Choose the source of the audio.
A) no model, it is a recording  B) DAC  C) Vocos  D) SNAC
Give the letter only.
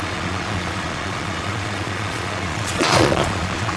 C